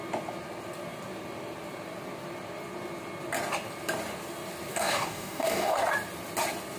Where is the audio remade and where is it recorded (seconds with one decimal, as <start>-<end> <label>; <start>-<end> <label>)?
0.0-4.7 recorded; 4.7-5.8 remade; 5.8-6.8 recorded